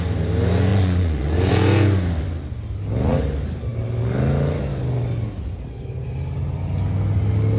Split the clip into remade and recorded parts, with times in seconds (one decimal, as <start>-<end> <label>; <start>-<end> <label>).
0.0-0.7 recorded; 0.7-1.5 remade; 1.5-7.6 recorded